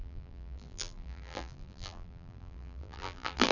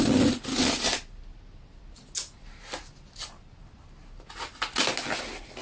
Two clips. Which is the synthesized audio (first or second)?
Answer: first